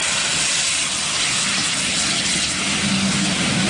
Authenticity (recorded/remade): recorded